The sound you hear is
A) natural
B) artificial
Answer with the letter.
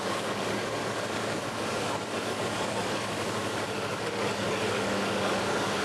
B